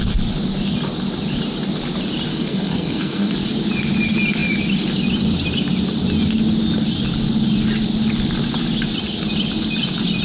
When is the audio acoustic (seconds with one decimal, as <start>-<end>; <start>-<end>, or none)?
0.0-2.3; 3.3-10.2